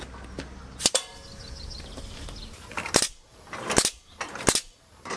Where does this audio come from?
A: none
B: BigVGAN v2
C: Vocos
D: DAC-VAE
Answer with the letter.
A